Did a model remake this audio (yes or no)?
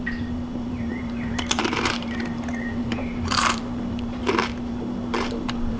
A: yes